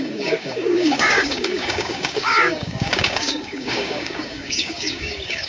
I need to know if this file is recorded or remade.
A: remade